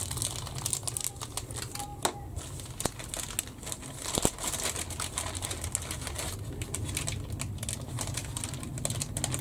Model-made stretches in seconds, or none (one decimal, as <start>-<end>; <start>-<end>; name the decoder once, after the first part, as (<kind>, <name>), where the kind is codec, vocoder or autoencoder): none